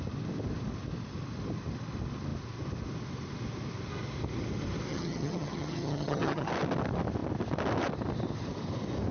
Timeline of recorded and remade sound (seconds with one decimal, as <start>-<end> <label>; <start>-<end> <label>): 0.0-4.9 recorded; 4.9-6.5 remade; 6.5-9.1 recorded